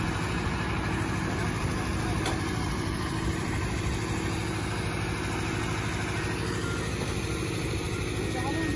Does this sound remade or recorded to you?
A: recorded